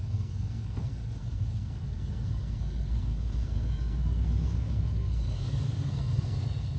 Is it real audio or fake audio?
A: fake